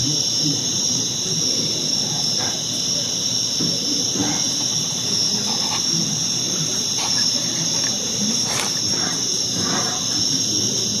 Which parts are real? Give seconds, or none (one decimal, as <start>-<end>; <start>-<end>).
0.9-6.2; 10.0-11.0

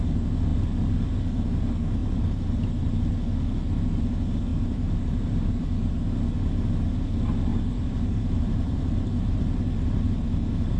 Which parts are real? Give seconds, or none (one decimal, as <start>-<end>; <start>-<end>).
0.0-2.0; 2.9-4.5; 5.9-7.5; 9.4-10.8

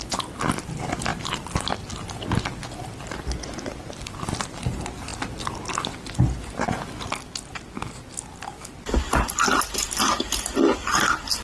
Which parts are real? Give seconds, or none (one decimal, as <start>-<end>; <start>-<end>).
0.0-11.4

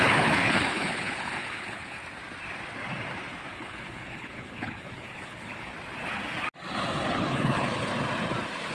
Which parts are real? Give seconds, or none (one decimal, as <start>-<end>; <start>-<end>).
2.0-3.5; 5.7-7.1; 7.9-8.7

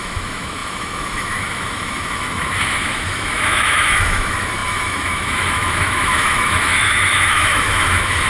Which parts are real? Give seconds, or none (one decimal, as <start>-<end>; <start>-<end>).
none

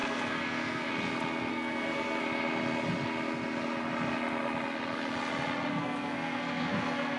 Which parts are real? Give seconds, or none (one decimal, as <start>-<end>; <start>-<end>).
0.9-1.5; 2.2-5.7